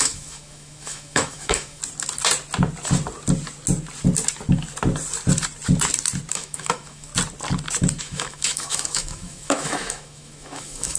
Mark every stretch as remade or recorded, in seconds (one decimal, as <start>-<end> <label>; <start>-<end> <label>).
0.0-1.8 remade; 1.8-6.3 recorded; 6.3-7.1 remade; 7.1-8.0 recorded; 8.0-11.0 remade